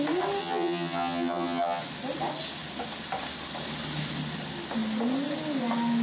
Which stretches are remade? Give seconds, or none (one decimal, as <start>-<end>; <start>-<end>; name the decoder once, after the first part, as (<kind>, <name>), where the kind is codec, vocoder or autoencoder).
0.4-1.8 (vocoder, HiFi-GAN)